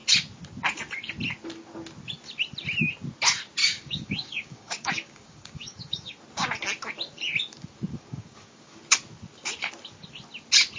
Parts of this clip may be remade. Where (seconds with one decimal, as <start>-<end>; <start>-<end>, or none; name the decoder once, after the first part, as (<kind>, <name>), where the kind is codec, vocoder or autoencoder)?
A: 3.6-6.1 (codec, DAC); 7.9-8.8